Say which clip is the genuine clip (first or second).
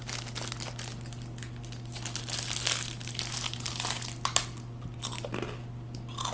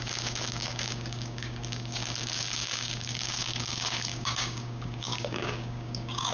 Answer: first